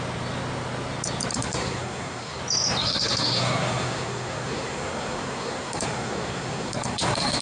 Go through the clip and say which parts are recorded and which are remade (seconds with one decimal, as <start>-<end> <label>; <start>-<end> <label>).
0.0-1.3 recorded; 1.3-2.4 remade; 2.4-2.8 recorded; 2.8-7.4 remade